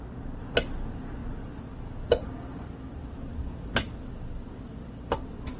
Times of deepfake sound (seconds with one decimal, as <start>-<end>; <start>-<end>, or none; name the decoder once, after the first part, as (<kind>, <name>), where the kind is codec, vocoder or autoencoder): none